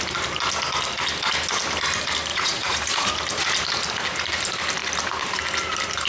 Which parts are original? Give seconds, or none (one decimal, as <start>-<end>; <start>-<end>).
0.0-2.3; 3.1-6.1